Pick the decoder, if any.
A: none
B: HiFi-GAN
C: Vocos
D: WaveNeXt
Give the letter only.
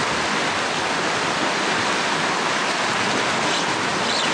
A